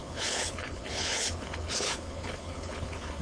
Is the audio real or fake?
fake